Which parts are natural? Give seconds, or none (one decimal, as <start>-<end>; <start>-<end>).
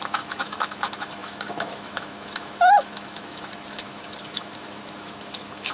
none